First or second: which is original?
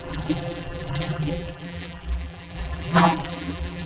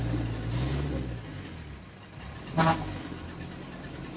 second